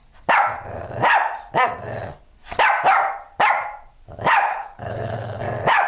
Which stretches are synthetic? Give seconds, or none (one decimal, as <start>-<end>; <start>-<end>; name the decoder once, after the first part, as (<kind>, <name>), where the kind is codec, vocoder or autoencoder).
4.5-5.4 (codec, HILCodec)